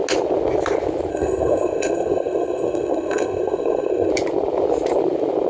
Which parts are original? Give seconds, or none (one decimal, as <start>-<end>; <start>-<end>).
0.0-1.1; 4.1-5.5